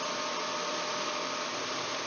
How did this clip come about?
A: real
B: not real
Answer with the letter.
B